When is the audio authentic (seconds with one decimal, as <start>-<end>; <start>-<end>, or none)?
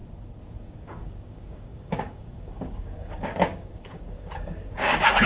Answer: 0.0-0.6